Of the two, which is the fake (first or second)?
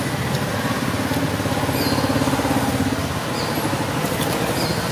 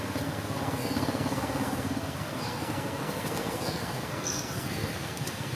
second